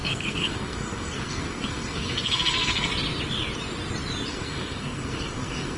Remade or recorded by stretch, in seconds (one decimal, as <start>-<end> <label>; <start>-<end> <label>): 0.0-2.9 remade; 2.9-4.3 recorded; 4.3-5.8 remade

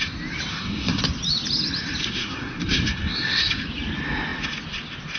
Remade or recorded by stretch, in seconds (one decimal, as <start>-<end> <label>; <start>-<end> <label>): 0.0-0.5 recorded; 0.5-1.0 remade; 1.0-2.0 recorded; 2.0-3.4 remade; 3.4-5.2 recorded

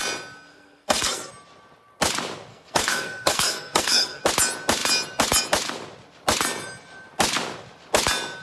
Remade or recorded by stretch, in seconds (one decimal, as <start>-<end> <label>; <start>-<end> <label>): 0.0-0.5 recorded; 0.5-1.3 remade; 1.3-2.5 recorded; 2.5-4.2 remade; 4.2-8.4 recorded

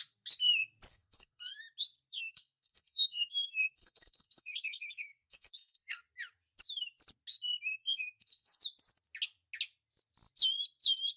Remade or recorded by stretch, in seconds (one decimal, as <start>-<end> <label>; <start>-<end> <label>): 0.0-0.9 recorded; 0.9-1.6 remade; 1.6-2.1 recorded; 2.1-6.0 remade; 6.0-7.8 recorded; 7.8-8.6 remade; 8.6-11.2 recorded